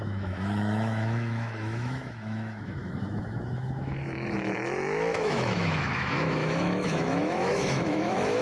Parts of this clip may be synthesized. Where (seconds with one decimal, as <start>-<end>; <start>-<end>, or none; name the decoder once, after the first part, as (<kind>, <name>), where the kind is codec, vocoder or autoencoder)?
0.0-8.4 (autoencoder, DAC-VAE)